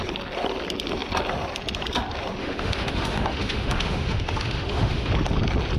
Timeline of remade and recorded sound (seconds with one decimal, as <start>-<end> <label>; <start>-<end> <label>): 0.0-2.4 recorded; 2.4-5.1 remade; 5.1-5.8 recorded